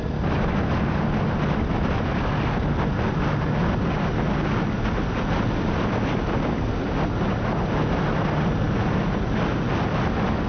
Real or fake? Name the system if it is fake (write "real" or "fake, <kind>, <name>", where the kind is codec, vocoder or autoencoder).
real